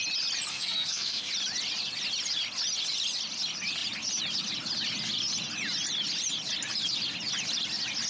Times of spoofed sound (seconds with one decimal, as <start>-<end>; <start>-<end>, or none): 0.5-1.3

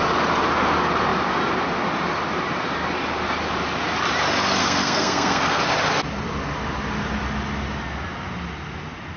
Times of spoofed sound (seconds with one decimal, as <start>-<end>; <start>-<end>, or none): 4.6-5.6